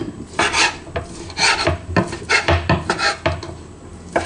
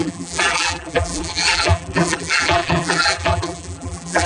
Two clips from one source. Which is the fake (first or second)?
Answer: second